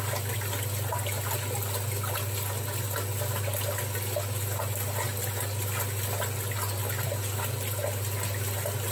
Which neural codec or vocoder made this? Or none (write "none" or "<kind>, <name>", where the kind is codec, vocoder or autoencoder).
none